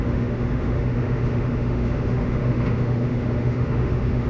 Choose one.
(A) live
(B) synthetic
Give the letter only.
B